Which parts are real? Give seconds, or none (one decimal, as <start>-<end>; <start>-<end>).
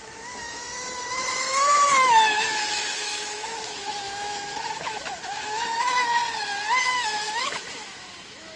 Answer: 6.2-6.8